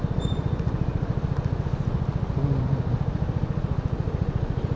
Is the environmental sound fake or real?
real